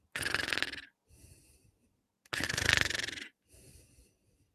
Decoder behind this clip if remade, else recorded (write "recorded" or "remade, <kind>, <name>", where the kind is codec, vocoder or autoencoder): recorded